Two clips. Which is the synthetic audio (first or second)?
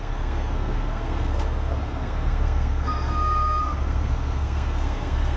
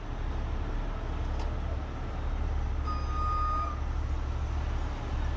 first